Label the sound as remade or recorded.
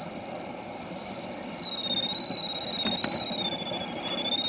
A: recorded